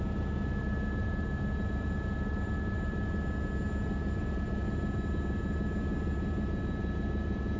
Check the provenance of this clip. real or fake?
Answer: real